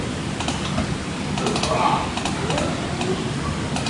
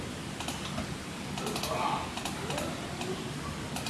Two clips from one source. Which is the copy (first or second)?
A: first